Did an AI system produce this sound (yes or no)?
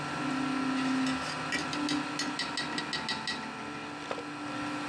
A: no